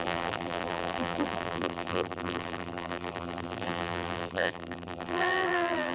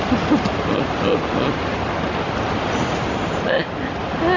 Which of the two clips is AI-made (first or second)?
first